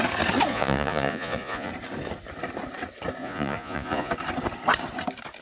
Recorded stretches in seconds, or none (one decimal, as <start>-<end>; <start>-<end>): 0.0-0.5; 1.7-3.2; 4.1-5.4